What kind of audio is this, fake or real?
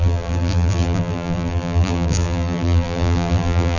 fake